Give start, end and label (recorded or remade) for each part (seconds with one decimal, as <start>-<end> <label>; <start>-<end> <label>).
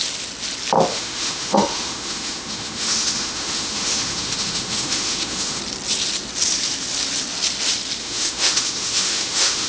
0.0-0.9 recorded; 0.9-5.6 remade; 5.6-8.0 recorded; 8.0-9.7 remade